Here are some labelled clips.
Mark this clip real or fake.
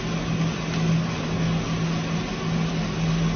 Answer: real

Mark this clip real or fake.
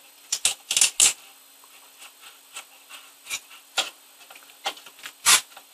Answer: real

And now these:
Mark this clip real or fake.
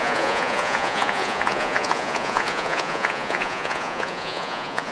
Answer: fake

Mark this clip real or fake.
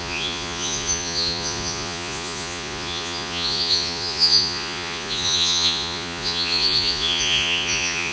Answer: fake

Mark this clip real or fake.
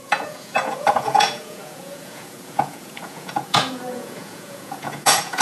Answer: fake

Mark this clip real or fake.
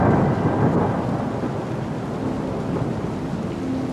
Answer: real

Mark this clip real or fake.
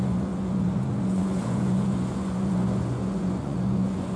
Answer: fake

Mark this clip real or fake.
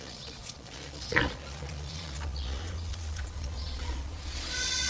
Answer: fake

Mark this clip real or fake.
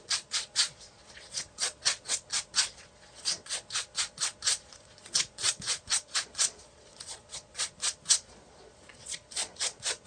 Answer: fake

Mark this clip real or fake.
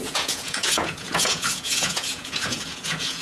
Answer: fake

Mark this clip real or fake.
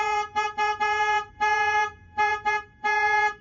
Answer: fake